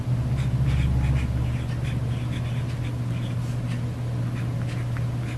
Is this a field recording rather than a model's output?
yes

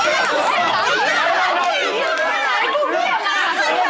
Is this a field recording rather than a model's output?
yes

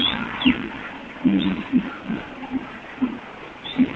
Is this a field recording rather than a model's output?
no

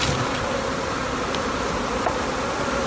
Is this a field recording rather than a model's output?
yes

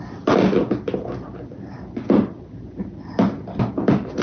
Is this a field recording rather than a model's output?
yes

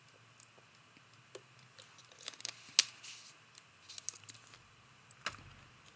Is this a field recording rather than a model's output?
yes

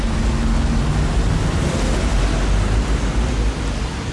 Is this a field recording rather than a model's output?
yes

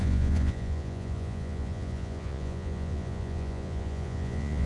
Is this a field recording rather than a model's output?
no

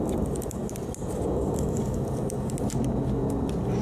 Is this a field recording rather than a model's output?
yes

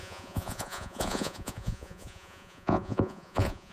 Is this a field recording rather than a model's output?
no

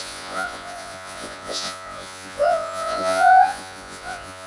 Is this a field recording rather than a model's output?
no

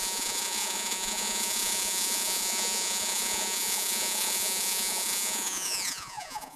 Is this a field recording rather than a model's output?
no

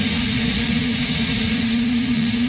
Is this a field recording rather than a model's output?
no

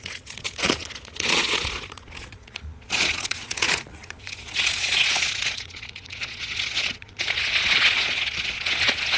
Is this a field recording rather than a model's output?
no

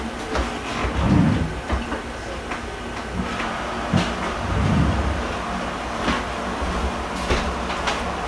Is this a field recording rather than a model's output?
yes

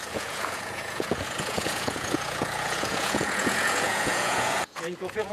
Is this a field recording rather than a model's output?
no